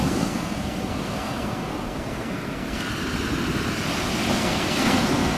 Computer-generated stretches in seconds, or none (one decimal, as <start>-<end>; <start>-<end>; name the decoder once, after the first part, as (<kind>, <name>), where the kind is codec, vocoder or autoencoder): 0.0-2.9 (codec, SNAC); 4.3-5.4

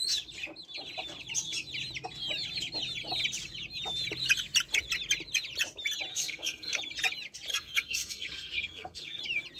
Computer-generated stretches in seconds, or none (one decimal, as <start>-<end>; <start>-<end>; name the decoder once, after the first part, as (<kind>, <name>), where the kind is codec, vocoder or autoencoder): 6.1-6.8 (codec, SNAC); 7.5-9.2

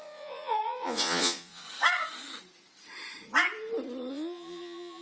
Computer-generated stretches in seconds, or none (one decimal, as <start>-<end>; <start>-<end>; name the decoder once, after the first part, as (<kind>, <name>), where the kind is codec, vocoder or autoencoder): 0.0-1.6 (vocoder, Vocos); 4.1-5.0

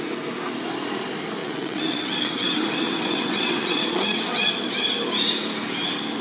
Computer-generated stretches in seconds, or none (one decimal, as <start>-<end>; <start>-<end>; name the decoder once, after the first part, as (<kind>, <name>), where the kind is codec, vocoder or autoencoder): 1.4-4.5 (vocoder, WaveNeXt)

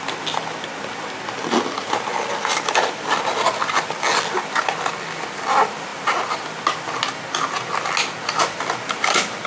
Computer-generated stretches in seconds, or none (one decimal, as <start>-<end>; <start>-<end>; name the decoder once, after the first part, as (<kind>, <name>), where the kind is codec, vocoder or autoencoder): none